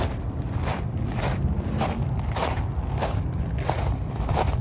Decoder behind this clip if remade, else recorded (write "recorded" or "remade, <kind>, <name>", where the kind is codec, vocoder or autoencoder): recorded